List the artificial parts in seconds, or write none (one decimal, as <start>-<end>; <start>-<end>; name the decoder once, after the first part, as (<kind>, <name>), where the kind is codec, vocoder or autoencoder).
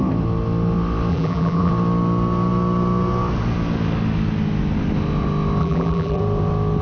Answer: 1.1-1.7 (vocoder, BigVGAN v2); 5.6-6.2